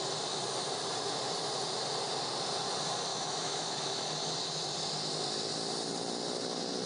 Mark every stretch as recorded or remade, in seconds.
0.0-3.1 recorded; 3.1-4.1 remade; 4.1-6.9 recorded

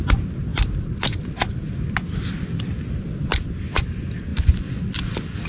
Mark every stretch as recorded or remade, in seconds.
0.0-0.5 recorded; 0.5-3.8 remade; 3.8-4.3 recorded; 4.3-5.5 remade

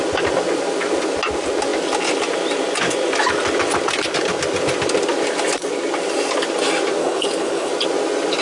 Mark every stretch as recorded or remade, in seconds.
0.0-7.0 recorded; 7.0-7.7 remade; 7.7-8.4 recorded

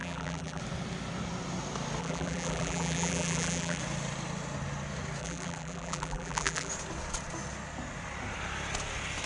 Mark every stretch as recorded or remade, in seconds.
0.0-0.6 remade; 0.6-2.0 recorded; 2.0-3.8 remade; 3.8-5.2 recorded; 5.2-6.7 remade; 6.7-9.3 recorded